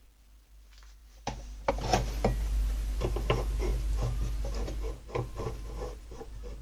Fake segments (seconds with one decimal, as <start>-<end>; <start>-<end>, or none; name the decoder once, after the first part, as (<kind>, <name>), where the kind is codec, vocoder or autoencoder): 1.0-1.7 (vocoder, BigVGAN v2)